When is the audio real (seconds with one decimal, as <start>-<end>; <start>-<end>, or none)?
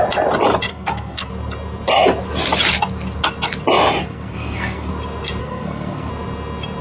0.0-0.7; 1.3-4.0; 4.9-5.4; 6.1-6.8